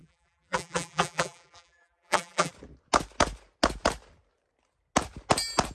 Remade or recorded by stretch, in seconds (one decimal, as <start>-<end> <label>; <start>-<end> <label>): 0.0-2.5 remade; 2.5-5.7 recorded